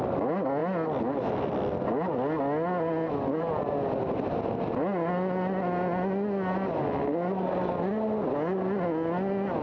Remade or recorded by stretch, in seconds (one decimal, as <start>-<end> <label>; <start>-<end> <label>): 0.0-9.6 recorded